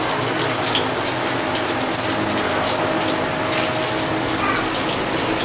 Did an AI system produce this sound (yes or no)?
no